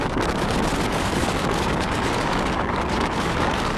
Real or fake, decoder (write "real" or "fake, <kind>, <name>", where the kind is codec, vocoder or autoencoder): fake, codec, DAC